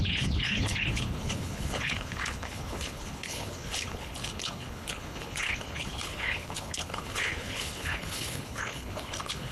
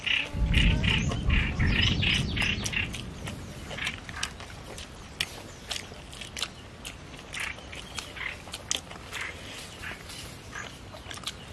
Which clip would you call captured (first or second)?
second